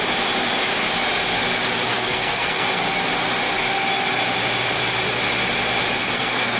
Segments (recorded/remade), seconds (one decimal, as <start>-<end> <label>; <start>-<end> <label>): 0.0-1.9 recorded; 1.9-2.8 remade; 2.8-6.0 recorded; 6.0-6.6 remade